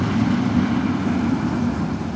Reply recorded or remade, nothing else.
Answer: recorded